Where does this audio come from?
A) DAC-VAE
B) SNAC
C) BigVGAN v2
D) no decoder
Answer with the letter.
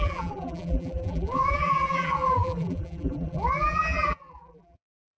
C